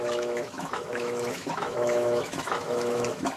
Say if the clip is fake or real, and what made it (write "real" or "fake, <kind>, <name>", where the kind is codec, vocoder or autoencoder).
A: fake, autoencoder, DAC-VAE